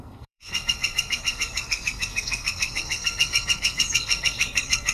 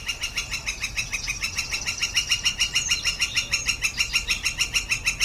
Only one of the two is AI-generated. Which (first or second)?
first